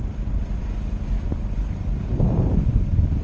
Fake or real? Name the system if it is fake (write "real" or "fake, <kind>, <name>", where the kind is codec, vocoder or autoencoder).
fake, vocoder, BigVGAN v2